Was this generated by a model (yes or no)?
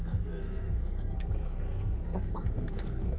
yes